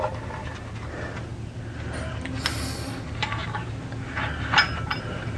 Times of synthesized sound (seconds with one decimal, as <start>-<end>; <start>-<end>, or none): none